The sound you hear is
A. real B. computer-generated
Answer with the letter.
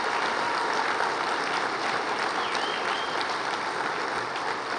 A